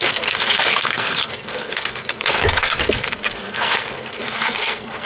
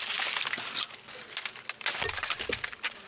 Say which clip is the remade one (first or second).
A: first